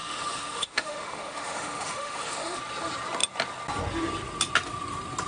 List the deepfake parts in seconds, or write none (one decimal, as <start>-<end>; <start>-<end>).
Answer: 0.0-2.6

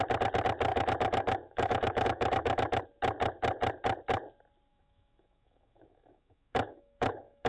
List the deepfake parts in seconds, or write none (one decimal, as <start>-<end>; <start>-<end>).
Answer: 0.7-2.8; 4.7-7.5

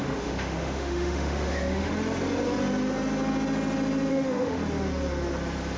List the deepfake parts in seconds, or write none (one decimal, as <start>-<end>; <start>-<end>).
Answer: 0.0-1.9; 4.1-4.6

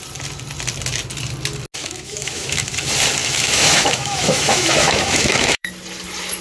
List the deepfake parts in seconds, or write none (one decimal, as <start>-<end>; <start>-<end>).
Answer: 1.8-2.7; 3.2-5.7

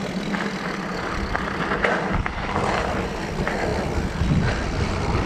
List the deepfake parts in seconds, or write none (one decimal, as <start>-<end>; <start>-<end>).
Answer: none

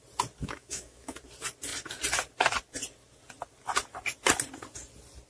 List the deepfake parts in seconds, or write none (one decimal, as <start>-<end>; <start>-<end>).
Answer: 0.4-1.2

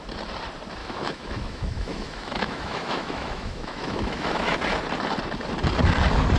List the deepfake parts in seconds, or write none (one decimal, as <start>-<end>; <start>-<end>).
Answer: 0.8-4.6